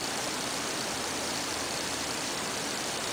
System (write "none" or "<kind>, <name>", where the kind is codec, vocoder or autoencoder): none